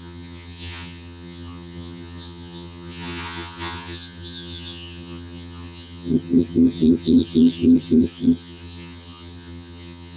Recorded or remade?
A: remade